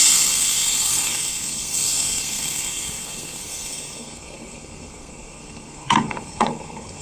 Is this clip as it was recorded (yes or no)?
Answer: no